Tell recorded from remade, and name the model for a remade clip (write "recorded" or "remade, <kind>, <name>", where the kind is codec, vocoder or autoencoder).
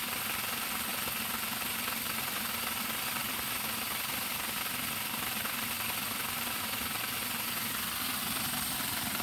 recorded